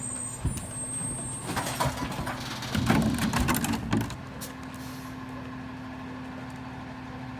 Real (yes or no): yes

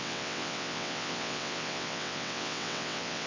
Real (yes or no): no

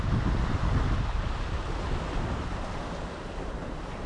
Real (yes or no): yes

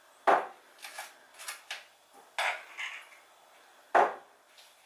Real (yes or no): yes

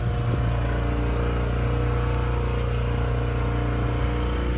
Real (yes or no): yes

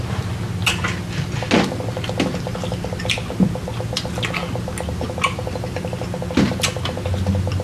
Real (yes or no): yes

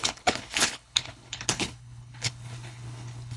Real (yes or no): no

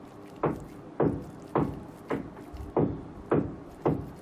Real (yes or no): yes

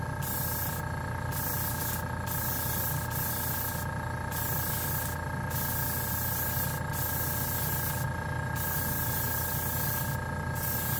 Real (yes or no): yes